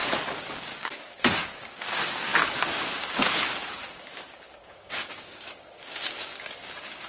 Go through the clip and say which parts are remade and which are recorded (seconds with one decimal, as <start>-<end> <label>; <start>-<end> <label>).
0.0-0.5 recorded; 0.5-7.1 remade